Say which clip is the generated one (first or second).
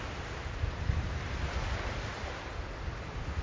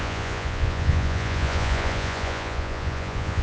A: second